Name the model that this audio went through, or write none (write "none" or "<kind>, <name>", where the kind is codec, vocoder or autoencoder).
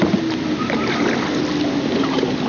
none